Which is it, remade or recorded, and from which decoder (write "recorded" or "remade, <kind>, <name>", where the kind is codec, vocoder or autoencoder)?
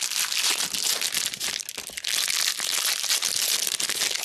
recorded